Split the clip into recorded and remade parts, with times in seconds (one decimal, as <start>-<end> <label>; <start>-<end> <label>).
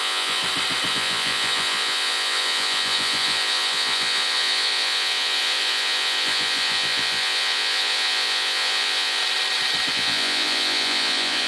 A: 0.0-0.4 remade; 0.4-0.9 recorded; 0.9-9.2 remade; 9.2-9.9 recorded; 9.9-11.5 remade